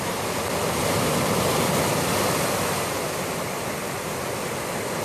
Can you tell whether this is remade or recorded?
recorded